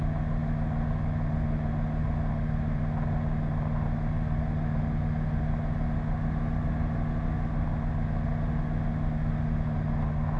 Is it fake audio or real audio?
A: real